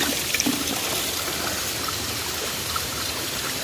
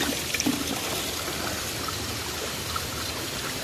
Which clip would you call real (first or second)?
second